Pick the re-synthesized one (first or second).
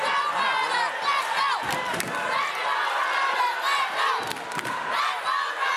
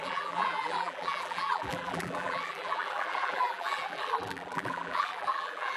second